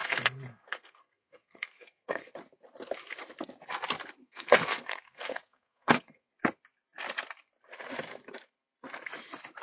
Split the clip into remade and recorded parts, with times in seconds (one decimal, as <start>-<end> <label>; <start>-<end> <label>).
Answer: 0.0-2.3 remade; 2.3-4.2 recorded; 4.2-6.3 remade; 6.3-9.6 recorded